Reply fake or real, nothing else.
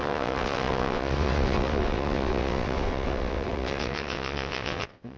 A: fake